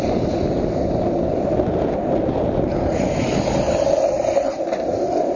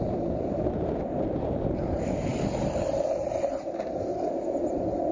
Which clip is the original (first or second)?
first